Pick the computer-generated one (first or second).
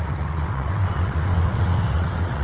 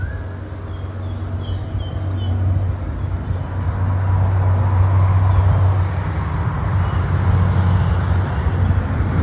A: first